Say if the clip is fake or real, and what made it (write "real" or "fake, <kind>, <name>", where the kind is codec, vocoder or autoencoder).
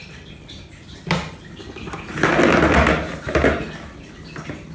real